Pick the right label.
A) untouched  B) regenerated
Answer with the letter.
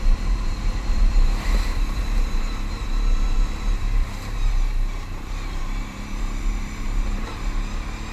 B